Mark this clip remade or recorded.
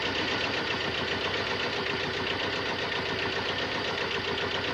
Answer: recorded